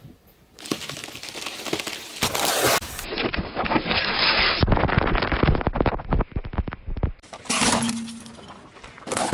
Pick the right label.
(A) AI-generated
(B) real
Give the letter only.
B